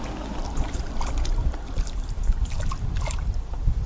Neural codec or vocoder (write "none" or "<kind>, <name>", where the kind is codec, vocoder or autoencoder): none